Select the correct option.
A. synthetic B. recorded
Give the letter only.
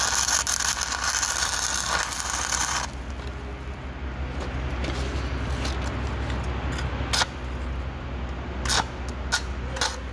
B